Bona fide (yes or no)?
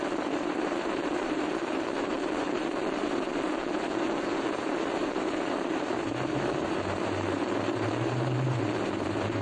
no